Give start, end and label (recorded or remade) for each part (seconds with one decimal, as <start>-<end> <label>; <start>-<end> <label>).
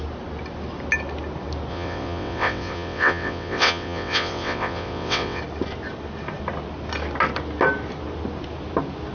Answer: 0.0-1.7 recorded; 1.7-5.4 remade; 5.4-9.1 recorded